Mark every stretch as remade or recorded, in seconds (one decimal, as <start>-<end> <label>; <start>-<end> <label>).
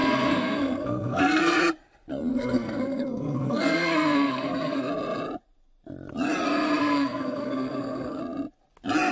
0.0-1.6 remade; 1.6-2.3 recorded; 2.3-4.9 remade; 4.9-6.8 recorded; 6.8-8.2 remade; 8.2-9.1 recorded